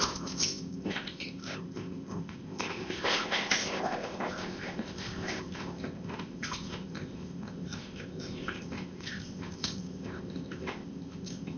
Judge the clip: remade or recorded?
remade